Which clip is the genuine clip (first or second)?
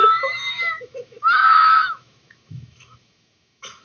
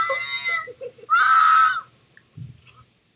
second